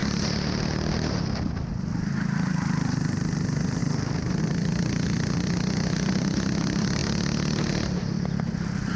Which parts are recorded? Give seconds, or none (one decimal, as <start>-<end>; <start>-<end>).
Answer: 0.0-9.0